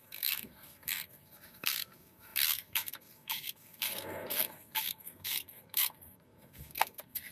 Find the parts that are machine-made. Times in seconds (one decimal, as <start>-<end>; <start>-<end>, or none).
0.0-7.3